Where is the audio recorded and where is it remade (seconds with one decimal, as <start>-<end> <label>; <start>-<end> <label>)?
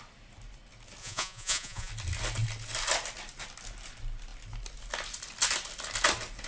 0.0-1.0 recorded; 1.0-1.9 remade; 1.9-6.5 recorded